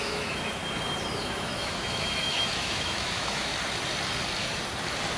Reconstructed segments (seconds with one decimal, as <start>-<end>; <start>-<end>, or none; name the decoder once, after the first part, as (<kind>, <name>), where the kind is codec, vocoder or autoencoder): 0.0-0.6 (autoencoder, DAC-VAE); 1.2-3.5